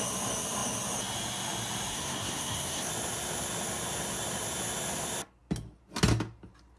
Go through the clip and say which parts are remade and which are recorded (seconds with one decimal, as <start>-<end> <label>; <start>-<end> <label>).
0.0-1.9 recorded; 1.9-2.9 remade; 2.9-6.8 recorded